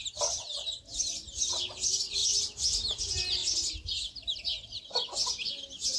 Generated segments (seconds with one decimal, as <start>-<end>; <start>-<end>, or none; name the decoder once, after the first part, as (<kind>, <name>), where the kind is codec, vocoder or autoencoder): none